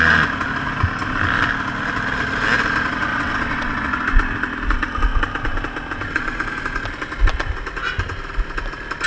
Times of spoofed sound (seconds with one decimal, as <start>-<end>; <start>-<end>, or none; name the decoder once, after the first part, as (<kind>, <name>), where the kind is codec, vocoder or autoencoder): 3.1-3.9 (vocoder, WaveNeXt)